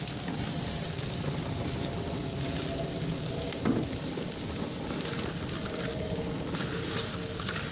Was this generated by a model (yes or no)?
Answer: no